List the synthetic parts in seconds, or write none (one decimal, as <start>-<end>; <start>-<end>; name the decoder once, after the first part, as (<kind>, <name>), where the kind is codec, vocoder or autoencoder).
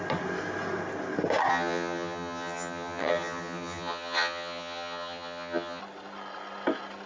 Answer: 1.5-5.8 (vocoder, HiFi-GAN)